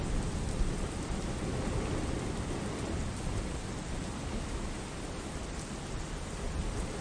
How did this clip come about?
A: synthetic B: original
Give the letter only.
B